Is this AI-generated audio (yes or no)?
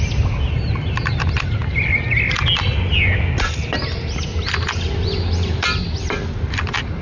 no